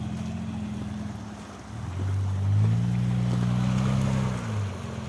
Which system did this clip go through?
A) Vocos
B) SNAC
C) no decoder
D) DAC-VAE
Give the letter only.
C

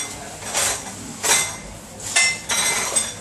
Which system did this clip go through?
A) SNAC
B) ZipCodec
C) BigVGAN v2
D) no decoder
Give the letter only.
D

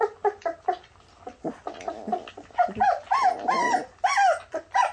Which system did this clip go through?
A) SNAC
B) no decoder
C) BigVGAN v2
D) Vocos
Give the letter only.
B